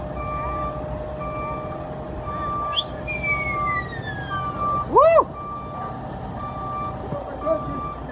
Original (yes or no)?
yes